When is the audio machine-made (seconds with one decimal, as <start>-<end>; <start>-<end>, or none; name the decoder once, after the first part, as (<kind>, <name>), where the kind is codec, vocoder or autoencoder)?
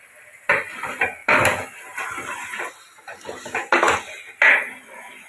none